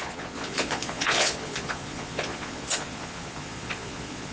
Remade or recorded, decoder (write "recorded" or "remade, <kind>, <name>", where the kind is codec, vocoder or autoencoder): remade, vocoder, Vocos